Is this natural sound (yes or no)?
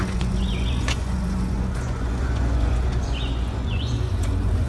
no